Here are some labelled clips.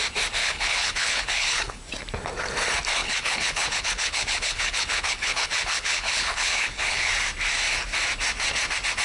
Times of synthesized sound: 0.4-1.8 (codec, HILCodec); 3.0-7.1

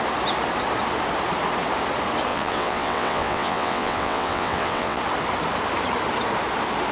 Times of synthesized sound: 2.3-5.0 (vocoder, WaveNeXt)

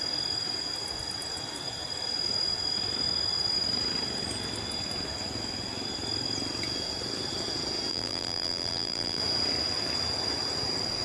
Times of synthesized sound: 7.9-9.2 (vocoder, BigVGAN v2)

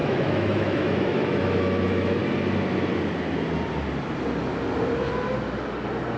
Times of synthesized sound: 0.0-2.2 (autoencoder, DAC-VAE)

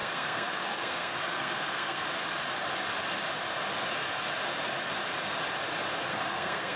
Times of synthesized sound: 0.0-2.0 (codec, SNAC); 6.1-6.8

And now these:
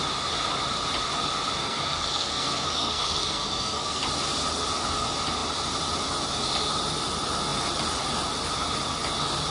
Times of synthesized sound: 1.6-4.0 (codec, SNAC)

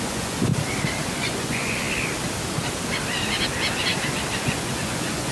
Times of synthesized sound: 0.0-0.5 (vocoder, Vocos); 1.1-1.8; 4.3-5.3

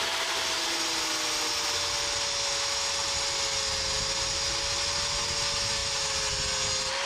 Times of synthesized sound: none